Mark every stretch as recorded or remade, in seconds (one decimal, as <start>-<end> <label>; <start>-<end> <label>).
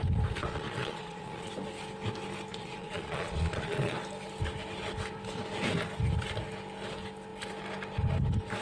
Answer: 0.0-0.4 recorded; 0.4-1.5 remade; 1.5-2.5 recorded; 2.5-4.0 remade; 4.0-8.6 recorded